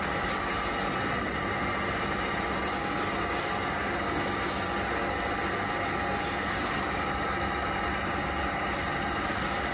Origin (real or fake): real